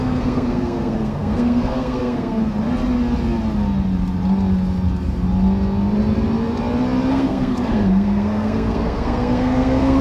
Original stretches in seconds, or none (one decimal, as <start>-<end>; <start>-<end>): 2.4-7.1